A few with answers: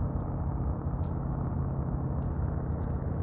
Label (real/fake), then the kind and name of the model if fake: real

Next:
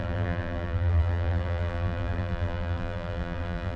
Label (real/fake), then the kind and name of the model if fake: fake, vocoder, BigVGAN v2